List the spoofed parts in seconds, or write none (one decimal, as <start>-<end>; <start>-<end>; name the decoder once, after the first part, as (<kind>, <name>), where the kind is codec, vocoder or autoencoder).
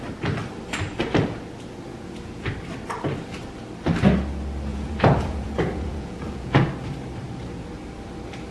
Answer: 1.9-2.5 (vocoder, Vocos); 4.7-6.6